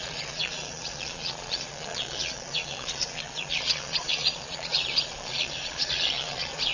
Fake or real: fake